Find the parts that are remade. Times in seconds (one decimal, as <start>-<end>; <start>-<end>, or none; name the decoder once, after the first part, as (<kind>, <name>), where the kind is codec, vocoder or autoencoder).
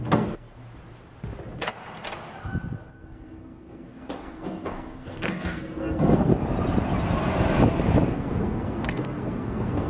0.0-0.6 (codec, SNAC); 2.9-6.3; 8.1-9.9